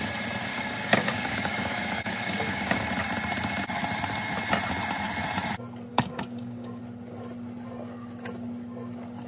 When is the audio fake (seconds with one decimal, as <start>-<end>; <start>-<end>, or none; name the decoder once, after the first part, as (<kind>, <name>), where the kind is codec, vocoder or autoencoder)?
0.5-2.9 (codec, DAC); 5.9-6.8